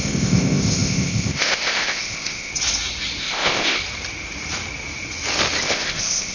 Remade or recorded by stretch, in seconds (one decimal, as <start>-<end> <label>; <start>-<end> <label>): 0.0-2.5 remade; 2.5-3.2 recorded; 3.2-3.8 remade; 3.8-5.6 recorded; 5.6-6.3 remade